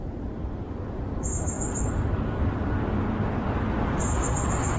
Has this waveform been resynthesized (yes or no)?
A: yes